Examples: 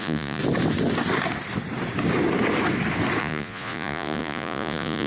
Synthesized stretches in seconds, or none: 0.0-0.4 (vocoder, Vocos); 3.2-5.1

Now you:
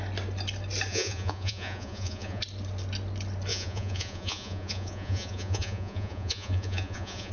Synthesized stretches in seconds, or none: 0.9-2.4 (vocoder, Vocos); 3.5-7.3

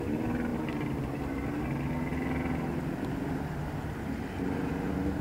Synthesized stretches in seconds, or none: none

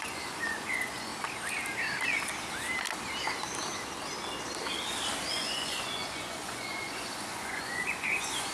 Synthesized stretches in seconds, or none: 0.0-1.1 (vocoder, Vocos); 5.3-8.5